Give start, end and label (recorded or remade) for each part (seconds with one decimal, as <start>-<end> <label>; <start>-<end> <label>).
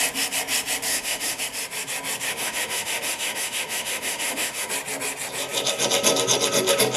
0.0-0.9 recorded; 0.9-1.4 remade; 1.4-2.3 recorded; 2.3-4.7 remade; 4.7-7.0 recorded